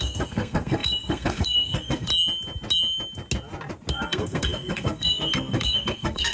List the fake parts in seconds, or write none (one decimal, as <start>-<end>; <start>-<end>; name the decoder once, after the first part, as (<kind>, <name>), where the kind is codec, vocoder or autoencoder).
0.0-2.1 (codec, SNAC); 3.9-6.3